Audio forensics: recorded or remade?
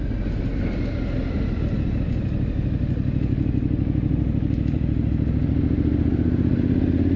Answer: recorded